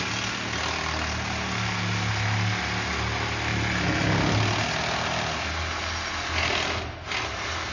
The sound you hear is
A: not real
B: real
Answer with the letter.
B